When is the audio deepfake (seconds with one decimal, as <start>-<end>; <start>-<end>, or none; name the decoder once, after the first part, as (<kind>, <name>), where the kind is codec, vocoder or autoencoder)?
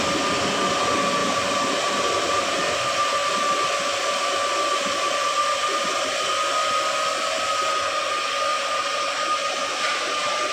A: 1.2-2.6 (vocoder, BigVGAN v2); 8.5-9.4